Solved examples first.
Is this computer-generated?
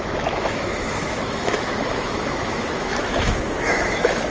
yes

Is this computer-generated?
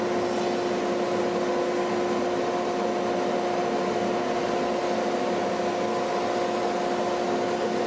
no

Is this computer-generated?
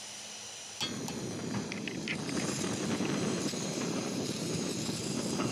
no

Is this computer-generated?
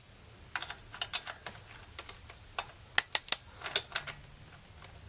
no